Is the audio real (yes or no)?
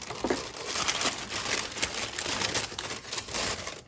yes